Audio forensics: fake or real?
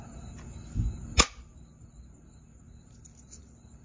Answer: real